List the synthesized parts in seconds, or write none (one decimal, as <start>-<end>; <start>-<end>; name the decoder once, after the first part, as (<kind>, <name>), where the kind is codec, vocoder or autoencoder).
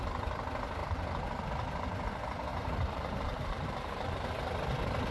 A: 0.8-1.4 (vocoder, BigVGAN v2); 2.5-4.3